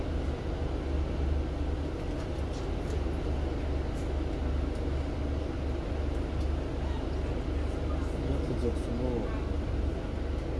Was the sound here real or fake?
real